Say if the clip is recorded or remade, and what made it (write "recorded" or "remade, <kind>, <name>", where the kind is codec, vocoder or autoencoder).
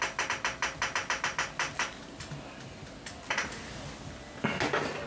recorded